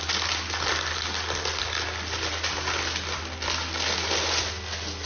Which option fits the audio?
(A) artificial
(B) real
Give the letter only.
B